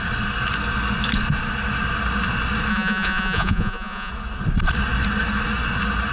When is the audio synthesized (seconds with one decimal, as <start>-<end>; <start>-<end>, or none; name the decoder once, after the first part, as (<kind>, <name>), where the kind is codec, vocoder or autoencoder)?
2.7-4.1 (vocoder, Vocos)